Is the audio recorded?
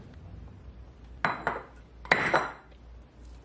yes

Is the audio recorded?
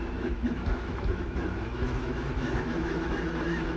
no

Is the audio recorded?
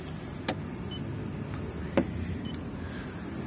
yes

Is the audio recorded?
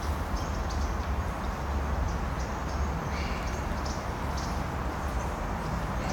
yes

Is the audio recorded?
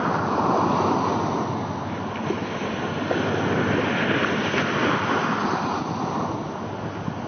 yes